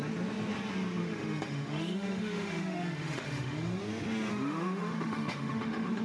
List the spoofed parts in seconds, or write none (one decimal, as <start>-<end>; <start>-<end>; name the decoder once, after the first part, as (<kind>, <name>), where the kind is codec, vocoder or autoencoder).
1.0-3.8 (autoencoder, DAC-VAE); 4.3-6.0